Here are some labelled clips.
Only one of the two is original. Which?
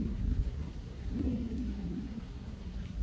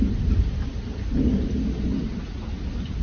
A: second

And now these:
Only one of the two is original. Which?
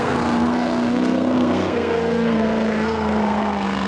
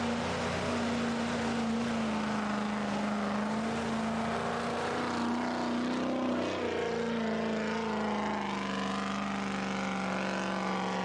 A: second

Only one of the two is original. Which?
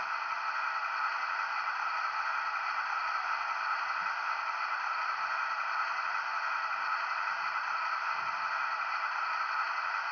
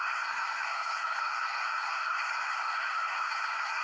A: first